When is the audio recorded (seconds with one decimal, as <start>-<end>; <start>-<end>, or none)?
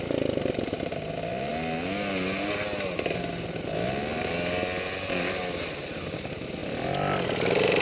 0.0-7.8